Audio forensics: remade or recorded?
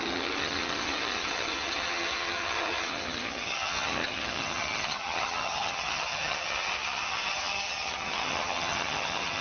remade